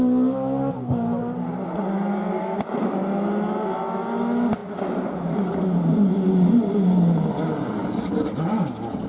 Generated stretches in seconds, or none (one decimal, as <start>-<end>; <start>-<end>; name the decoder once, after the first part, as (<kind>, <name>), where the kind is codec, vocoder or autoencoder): none